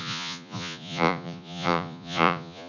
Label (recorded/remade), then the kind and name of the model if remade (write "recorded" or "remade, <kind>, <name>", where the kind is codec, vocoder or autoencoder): remade, vocoder, Vocos